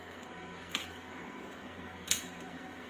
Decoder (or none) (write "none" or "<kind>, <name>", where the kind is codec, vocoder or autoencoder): codec, SNAC